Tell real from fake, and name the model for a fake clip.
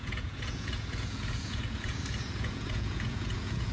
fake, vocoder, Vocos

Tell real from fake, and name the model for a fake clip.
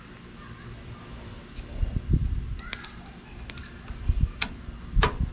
real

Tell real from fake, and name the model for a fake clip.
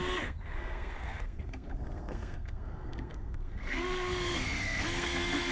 fake, codec, SNAC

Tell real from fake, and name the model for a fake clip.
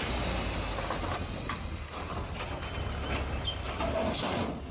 real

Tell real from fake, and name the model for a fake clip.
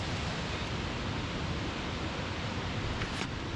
real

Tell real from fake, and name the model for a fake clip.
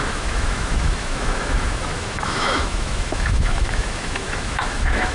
fake, autoencoder, DAC-VAE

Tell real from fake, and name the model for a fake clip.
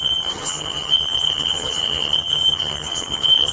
fake, vocoder, HiFi-GAN